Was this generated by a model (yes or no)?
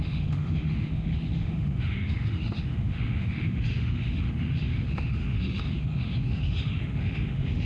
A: yes